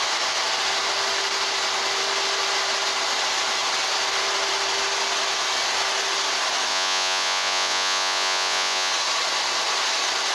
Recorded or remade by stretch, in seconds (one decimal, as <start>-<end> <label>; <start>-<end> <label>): 0.0-6.7 recorded; 6.7-8.9 remade; 8.9-10.3 recorded